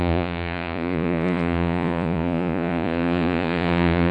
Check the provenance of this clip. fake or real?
fake